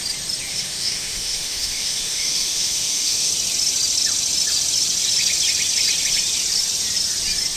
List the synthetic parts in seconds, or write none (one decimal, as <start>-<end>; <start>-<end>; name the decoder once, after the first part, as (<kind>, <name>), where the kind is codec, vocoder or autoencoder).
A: 0.5-3.3 (autoencoder, DAC-VAE)